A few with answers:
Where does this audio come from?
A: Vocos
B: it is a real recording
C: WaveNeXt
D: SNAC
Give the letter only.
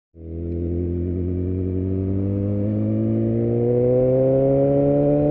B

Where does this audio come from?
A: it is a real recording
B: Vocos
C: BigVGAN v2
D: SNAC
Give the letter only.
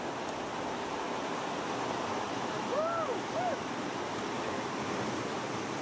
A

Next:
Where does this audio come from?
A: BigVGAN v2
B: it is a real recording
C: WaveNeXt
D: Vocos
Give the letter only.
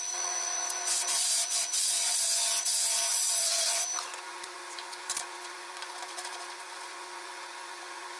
D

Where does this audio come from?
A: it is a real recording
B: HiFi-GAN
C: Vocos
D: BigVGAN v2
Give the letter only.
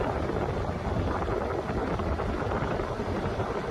D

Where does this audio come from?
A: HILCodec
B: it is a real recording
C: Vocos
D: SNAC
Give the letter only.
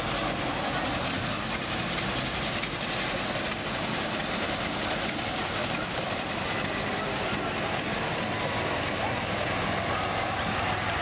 B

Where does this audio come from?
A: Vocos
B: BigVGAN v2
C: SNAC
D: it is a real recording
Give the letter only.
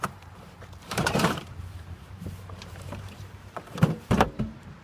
B